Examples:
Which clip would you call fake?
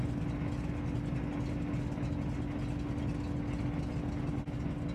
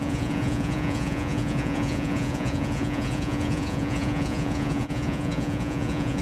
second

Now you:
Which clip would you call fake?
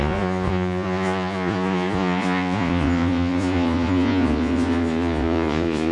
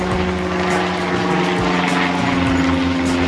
first